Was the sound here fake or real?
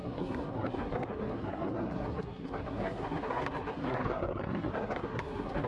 fake